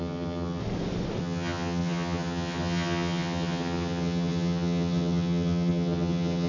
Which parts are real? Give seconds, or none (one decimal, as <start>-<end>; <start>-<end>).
0.6-1.2